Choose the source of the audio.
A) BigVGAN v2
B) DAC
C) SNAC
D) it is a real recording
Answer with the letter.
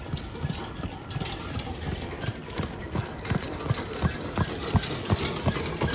A